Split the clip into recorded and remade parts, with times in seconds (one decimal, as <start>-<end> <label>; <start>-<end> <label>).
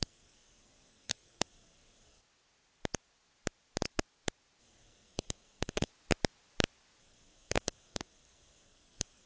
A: 0.0-2.2 remade; 2.2-4.6 recorded; 4.6-5.9 remade; 5.9-7.0 recorded; 7.0-9.3 remade